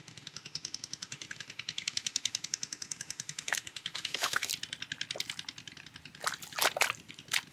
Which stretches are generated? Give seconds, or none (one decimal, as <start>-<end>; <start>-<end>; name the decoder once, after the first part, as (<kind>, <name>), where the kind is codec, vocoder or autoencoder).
0.0-4.5 (autoencoder, DAC-VAE)